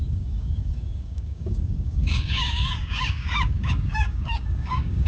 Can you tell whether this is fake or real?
fake